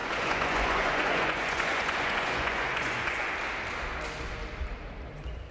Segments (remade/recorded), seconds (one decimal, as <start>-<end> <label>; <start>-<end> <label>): 0.0-3.3 remade; 3.3-5.5 recorded